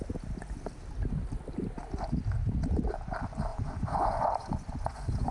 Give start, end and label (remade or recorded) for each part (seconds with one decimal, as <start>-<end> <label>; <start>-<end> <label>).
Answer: 0.0-3.5 recorded; 3.5-5.3 remade